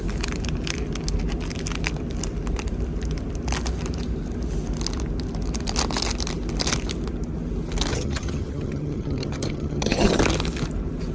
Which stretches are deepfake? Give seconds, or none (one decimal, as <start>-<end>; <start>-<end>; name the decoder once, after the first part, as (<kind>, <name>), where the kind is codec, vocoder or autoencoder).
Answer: 7.9-10.2 (vocoder, HiFi-GAN)